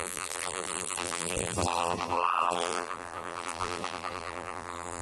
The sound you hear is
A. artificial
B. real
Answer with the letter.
A